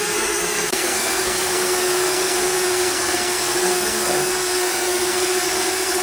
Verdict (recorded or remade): remade